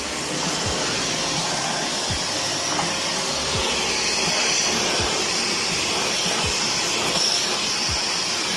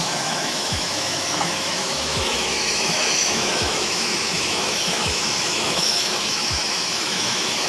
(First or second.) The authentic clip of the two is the first